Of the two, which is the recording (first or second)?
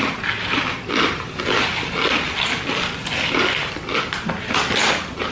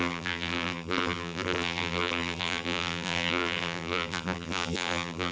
first